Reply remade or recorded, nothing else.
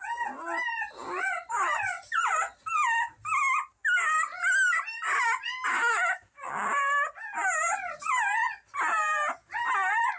recorded